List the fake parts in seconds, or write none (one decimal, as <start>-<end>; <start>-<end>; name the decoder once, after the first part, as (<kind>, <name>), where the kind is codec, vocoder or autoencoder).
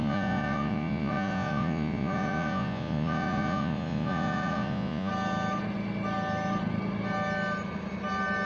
0.0-5.1 (vocoder, Vocos)